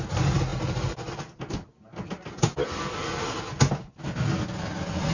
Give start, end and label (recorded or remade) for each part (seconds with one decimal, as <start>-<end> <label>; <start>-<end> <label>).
0.0-5.1 recorded